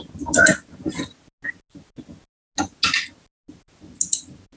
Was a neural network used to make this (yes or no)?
no